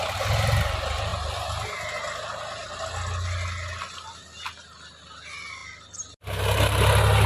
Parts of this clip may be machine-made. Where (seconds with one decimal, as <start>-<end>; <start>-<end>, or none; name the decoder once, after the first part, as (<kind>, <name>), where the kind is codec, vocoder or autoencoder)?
none